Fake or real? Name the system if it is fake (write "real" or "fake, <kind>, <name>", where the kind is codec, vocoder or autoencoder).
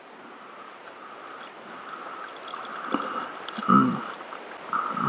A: real